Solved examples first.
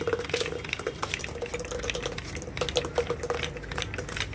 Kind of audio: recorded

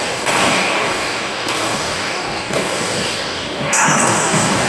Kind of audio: remade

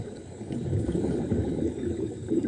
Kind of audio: remade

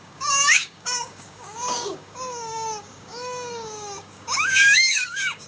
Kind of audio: remade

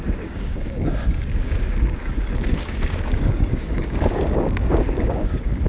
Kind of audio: remade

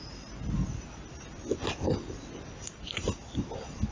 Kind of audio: recorded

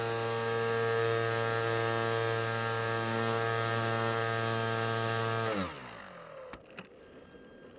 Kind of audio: recorded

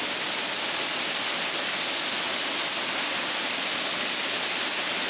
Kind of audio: recorded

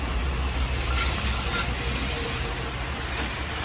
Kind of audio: recorded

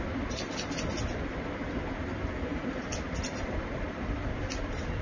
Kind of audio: recorded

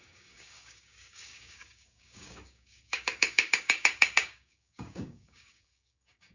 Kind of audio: remade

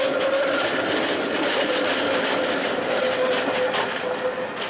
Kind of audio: recorded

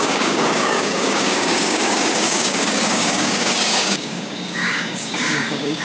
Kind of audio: remade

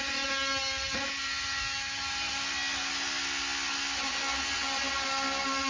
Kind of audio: recorded